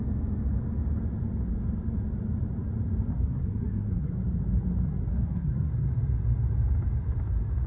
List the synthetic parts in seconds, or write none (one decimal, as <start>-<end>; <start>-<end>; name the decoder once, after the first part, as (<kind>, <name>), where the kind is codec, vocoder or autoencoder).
3.1-4.1 (codec, SNAC); 5.1-5.7